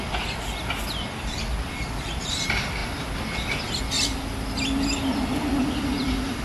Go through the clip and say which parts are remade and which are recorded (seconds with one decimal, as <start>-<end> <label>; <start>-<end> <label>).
0.0-6.4 recorded